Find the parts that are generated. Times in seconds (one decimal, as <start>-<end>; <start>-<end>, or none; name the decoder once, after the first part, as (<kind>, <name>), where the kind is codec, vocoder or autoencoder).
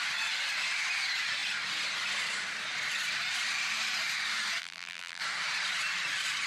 4.6-5.2 (vocoder, BigVGAN v2)